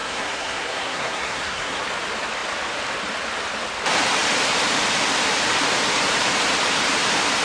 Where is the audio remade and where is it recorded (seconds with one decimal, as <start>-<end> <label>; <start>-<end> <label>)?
0.0-1.8 remade; 1.8-7.4 recorded